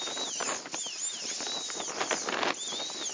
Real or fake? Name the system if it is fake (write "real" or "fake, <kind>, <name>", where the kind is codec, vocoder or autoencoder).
real